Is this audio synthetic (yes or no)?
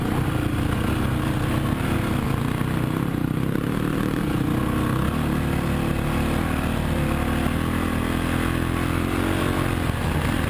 no